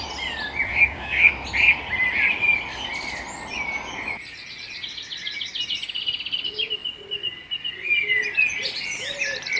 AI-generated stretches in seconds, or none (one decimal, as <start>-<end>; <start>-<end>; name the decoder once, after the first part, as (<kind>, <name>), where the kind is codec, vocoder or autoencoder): 0.7-1.3 (codec, DAC)